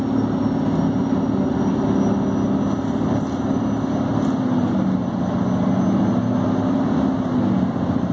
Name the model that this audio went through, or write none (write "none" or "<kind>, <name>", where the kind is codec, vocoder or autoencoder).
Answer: none